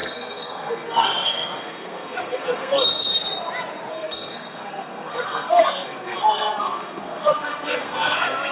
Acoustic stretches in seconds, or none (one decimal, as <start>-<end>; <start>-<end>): 3.1-3.9